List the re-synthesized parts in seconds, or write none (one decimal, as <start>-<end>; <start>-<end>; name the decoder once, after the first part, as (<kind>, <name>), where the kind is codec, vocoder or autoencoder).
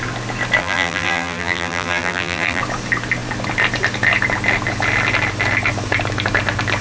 0.6-2.6 (vocoder, BigVGAN v2)